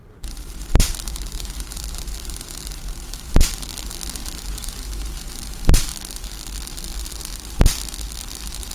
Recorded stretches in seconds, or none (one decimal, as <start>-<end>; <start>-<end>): 3.7-4.4; 5.9-8.7